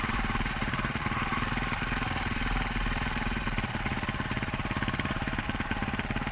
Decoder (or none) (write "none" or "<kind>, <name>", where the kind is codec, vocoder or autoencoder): vocoder, BigVGAN v2